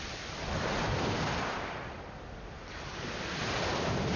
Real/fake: fake